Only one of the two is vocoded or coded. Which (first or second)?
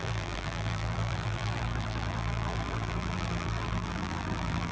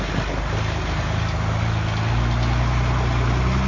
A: first